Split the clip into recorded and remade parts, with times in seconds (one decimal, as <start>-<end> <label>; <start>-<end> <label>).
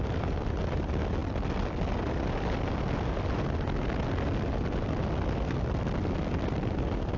0.0-7.2 recorded